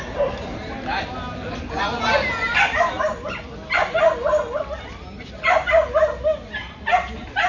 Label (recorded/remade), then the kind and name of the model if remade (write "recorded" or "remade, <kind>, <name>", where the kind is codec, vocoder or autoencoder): recorded